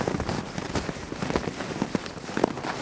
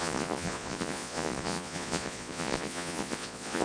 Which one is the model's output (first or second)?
second